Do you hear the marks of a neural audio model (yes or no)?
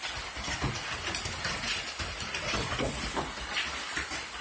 no